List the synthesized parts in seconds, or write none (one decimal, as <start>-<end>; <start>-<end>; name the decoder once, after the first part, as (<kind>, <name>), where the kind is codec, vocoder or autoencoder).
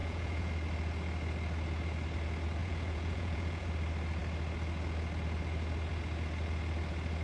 0.0-0.5 (vocoder, Vocos); 2.6-3.7